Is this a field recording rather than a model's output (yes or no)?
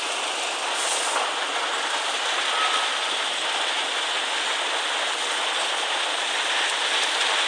yes